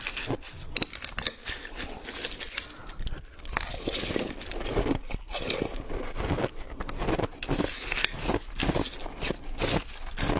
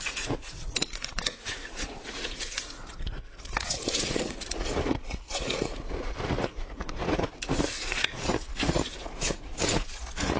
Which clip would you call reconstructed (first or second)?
second